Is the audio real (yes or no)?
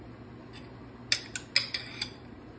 yes